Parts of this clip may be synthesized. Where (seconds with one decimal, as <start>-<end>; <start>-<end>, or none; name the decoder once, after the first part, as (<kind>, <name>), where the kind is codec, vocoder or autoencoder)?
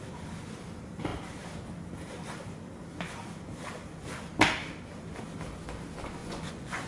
6.2-6.9 (vocoder, Vocos)